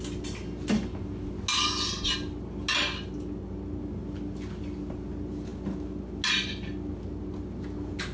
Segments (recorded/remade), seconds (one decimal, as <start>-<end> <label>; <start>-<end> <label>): 0.0-8.1 recorded